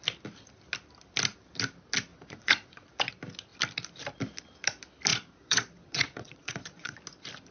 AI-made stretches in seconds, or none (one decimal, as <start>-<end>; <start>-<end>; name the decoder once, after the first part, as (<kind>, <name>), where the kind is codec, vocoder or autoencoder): 2.1-3.1 (vocoder, Vocos); 5.1-7.0